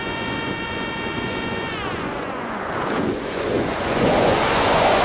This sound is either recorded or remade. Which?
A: remade